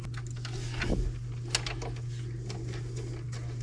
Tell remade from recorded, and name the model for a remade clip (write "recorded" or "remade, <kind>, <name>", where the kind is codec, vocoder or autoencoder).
recorded